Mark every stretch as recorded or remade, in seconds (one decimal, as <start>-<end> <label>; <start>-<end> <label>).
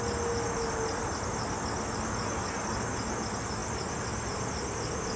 0.0-5.2 recorded